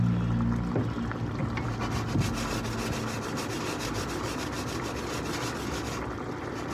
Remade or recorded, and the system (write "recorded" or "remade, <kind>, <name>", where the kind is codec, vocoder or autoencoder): recorded